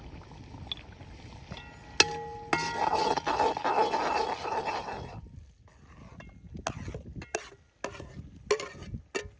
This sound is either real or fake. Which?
real